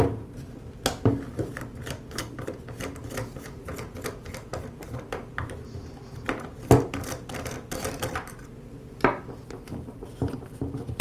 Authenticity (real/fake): real